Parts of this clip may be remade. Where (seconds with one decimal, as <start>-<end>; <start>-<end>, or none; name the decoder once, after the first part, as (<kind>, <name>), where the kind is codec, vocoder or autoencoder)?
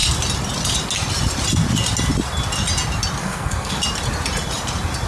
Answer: 3.2-3.8 (codec, SNAC)